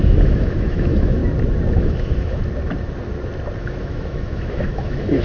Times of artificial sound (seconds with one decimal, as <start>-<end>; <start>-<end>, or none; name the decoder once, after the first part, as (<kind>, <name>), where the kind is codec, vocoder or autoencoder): 0.0-1.2 (autoencoder, DAC-VAE); 1.8-2.4; 3.6-5.2